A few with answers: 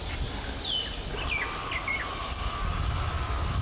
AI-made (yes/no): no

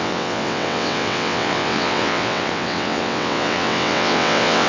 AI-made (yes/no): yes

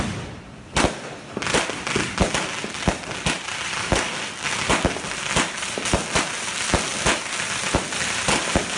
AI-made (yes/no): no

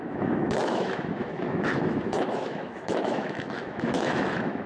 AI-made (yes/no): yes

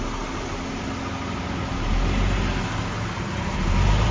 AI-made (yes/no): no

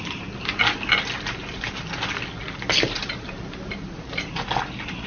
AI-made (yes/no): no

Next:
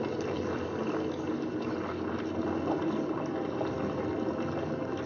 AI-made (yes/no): no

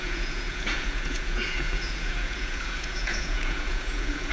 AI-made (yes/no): yes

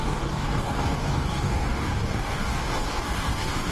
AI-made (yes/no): yes